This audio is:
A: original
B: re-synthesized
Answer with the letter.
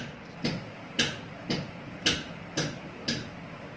A